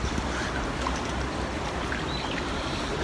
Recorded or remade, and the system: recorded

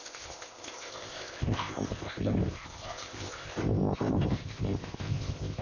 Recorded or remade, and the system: remade, codec, ZipCodec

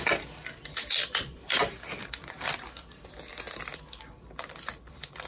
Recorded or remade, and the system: remade, vocoder, BigVGAN v2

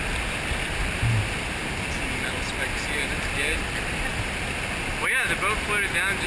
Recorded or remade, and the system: recorded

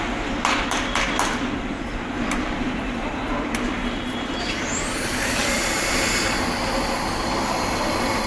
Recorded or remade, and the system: remade, vocoder, BigVGAN v2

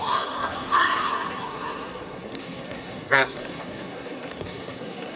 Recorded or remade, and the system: remade, codec, SNAC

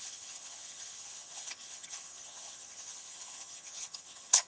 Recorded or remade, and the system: remade, vocoder, HiFi-GAN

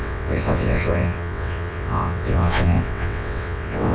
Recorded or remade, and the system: remade, vocoder, WaveNeXt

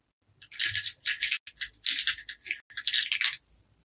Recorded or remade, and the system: recorded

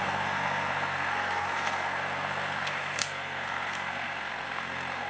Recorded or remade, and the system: remade, codec, SNAC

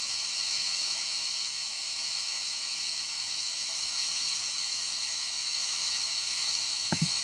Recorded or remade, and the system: remade, autoencoder, DAC-VAE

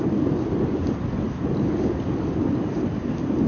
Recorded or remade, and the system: recorded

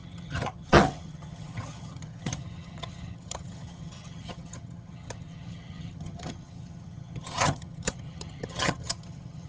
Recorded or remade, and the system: remade, vocoder, HiFi-GAN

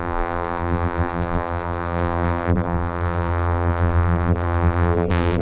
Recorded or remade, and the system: remade, vocoder, BigVGAN v2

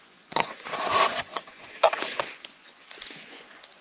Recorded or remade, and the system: remade, vocoder, Vocos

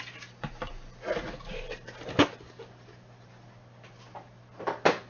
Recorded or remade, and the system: recorded